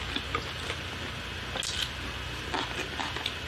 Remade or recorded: recorded